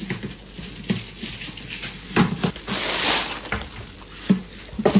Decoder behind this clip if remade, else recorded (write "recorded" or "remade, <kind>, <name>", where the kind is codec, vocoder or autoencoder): recorded